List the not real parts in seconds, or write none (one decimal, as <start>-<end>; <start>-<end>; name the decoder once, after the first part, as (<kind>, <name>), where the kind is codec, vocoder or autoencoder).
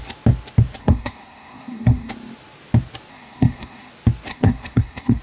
0.8-2.1 (codec, SNAC); 3.1-3.9; 4.3-5.2